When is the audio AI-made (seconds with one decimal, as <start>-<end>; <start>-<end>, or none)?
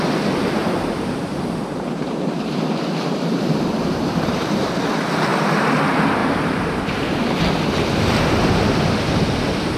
0.6-4.4; 6.2-7.4